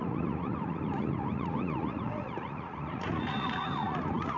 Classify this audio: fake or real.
fake